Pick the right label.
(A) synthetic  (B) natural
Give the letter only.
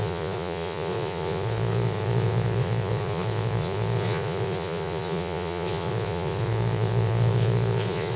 A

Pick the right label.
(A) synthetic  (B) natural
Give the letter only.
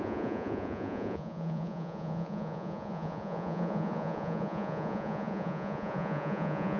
A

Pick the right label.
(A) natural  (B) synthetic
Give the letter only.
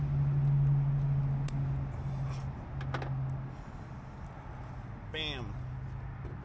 A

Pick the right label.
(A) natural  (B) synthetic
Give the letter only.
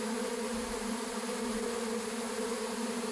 A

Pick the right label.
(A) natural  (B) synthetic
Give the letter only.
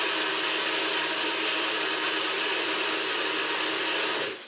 A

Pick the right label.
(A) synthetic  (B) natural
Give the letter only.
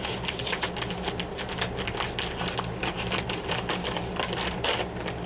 B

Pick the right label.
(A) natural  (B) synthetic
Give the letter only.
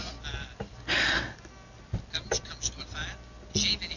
A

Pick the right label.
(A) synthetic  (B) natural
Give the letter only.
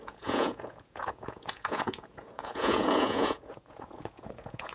A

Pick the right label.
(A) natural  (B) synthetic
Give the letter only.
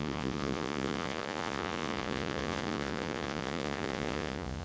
B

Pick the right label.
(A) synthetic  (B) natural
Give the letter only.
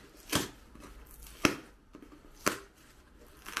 B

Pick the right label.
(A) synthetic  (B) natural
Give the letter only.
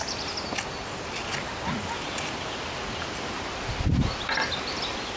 B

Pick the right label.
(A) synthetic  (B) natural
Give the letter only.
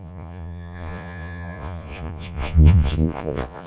A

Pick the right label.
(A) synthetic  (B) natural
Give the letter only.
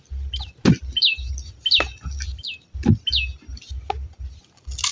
B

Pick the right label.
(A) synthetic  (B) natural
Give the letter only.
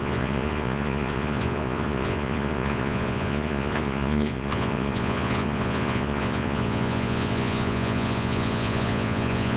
A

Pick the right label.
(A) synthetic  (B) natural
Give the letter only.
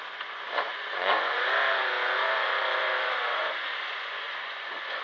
A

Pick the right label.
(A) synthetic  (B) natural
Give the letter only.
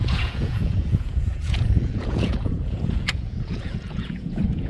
A